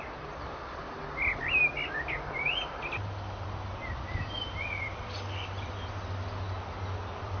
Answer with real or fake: fake